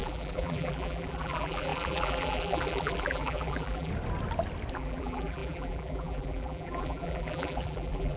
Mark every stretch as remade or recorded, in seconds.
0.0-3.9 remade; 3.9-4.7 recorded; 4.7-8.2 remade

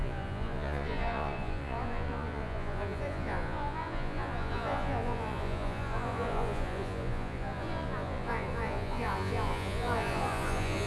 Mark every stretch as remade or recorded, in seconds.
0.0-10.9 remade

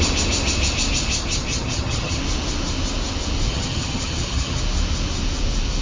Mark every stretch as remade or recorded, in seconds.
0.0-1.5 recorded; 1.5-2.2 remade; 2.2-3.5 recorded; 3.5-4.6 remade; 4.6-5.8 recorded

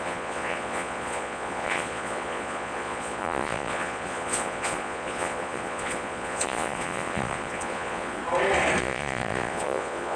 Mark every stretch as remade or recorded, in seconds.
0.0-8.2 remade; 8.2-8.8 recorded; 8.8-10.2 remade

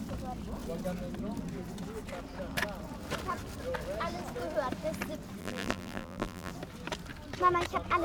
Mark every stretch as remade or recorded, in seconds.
0.0-5.4 recorded; 5.4-6.5 remade; 6.5-8.0 recorded

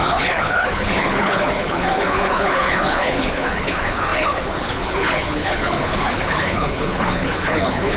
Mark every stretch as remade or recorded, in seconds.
0.0-8.0 remade